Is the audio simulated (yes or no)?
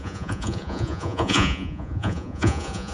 yes